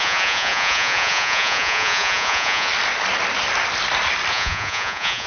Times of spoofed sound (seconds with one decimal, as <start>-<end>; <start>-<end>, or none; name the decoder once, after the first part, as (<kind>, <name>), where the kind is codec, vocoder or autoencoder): 0.0-2.7 (vocoder, Vocos); 4.3-5.3